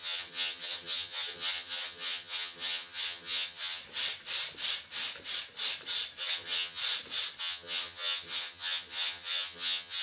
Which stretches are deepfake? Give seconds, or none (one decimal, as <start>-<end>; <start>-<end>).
0.0-3.8; 6.2-6.8; 7.4-10.0